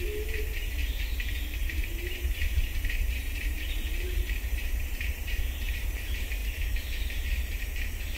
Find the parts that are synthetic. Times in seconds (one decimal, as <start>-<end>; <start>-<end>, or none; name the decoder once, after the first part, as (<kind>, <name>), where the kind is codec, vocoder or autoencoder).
1.6-5.9 (vocoder, BigVGAN v2)